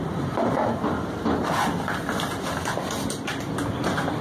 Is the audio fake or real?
real